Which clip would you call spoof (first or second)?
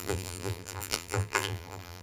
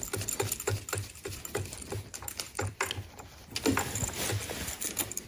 first